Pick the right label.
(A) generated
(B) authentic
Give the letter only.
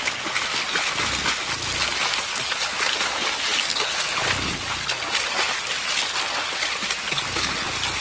B